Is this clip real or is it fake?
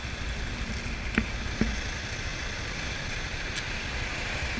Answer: real